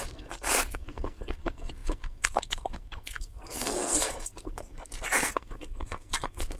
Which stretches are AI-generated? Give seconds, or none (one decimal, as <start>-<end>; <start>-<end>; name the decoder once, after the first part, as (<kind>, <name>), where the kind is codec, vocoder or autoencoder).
0.0-6.6 (codec, SNAC)

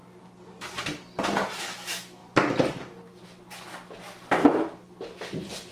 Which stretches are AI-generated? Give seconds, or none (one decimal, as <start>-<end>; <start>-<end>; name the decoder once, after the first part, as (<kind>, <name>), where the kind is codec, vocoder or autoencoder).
1.6-2.2 (autoencoder, DAC-VAE)

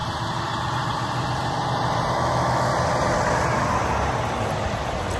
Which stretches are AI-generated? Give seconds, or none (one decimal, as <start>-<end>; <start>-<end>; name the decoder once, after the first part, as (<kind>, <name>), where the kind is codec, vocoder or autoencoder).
2.1-2.7 (autoencoder, DAC-VAE)

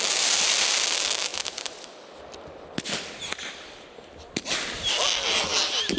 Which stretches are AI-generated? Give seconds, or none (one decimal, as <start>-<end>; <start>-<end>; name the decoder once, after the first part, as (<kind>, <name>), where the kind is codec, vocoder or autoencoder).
none

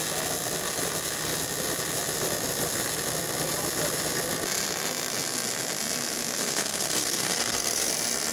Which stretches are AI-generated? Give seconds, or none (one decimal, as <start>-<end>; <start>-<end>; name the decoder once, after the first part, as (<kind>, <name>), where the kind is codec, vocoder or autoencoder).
6.4-7.9 (codec, SNAC)

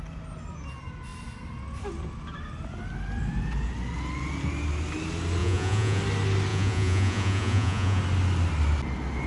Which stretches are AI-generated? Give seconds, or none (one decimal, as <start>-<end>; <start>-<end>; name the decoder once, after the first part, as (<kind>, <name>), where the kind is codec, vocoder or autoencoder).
5.4-6.0 (vocoder, Vocos); 6.5-8.0

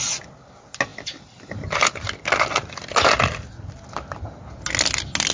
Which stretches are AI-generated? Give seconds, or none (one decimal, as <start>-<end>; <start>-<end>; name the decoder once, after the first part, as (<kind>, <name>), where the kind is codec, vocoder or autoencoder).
none

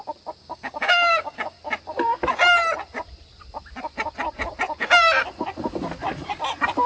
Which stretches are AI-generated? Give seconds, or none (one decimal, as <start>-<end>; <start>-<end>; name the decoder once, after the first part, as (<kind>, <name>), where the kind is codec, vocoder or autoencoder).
0.4-1.6 (codec, DAC)